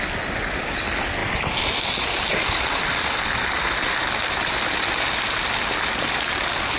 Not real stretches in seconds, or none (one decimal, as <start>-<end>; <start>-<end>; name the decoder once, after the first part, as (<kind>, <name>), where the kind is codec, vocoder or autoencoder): none